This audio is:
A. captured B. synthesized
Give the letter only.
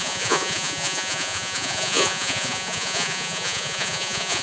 B